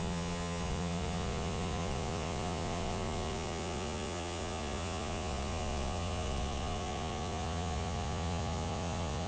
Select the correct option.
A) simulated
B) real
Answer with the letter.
A